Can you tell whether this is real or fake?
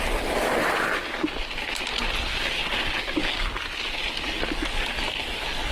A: real